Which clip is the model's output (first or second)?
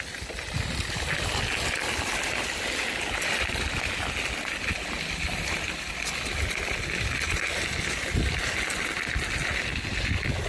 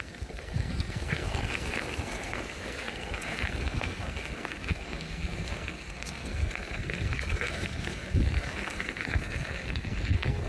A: second